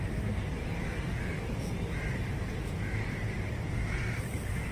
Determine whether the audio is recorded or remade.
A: remade